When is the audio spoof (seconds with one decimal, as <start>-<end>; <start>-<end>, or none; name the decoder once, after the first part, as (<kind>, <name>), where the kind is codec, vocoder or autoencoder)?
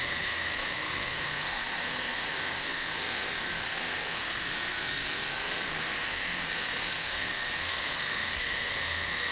0.0-9.3 (codec, SNAC)